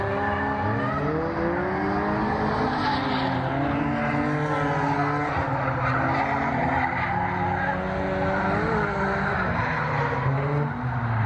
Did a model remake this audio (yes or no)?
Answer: no